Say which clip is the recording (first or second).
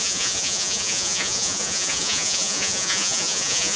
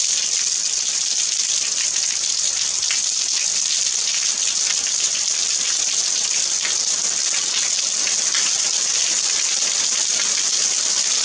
second